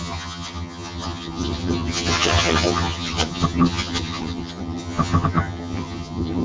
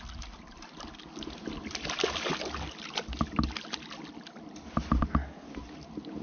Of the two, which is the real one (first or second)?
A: second